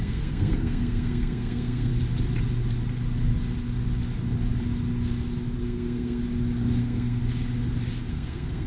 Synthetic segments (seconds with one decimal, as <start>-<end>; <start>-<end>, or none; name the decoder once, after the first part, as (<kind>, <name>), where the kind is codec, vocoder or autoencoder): 0.0-1.9 (codec, SNAC); 5.6-6.2; 6.8-7.2; 8.1-8.7